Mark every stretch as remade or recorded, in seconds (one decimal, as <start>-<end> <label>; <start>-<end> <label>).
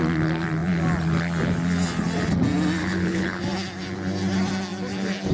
0.0-2.8 recorded; 2.8-3.4 remade; 3.4-5.3 recorded